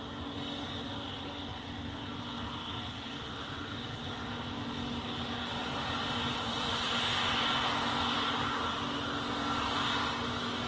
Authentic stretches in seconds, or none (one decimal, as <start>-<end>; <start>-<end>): 0.0-10.7